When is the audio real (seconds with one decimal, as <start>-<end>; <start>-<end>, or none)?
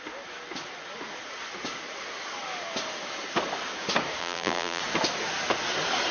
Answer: 0.0-4.2; 4.8-6.1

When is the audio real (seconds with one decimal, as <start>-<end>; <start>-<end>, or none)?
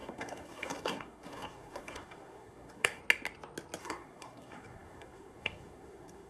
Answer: 3.0-3.8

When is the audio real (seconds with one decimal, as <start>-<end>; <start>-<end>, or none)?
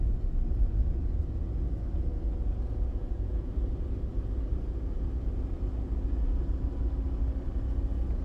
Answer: 0.0-2.1; 3.5-8.2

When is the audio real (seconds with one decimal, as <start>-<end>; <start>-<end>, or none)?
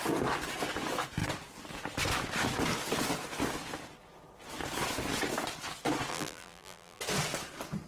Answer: 0.0-6.1; 7.0-7.9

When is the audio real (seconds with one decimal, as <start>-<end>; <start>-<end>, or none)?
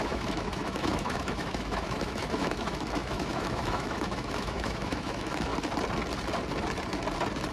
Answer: 5.5-7.5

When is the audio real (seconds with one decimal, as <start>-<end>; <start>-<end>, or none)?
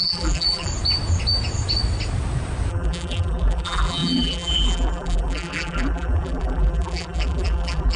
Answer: 0.7-2.7